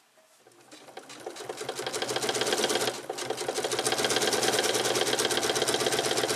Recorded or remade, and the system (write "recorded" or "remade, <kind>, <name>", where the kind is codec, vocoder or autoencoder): recorded